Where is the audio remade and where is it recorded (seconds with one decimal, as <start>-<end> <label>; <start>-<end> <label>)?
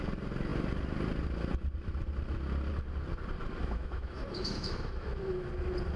0.0-3.6 recorded; 3.6-5.5 remade; 5.5-6.0 recorded